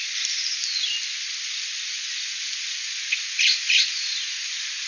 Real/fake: real